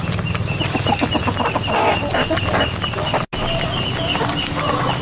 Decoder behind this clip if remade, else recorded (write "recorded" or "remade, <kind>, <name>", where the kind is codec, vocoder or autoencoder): recorded